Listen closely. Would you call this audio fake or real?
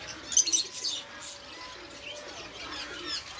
real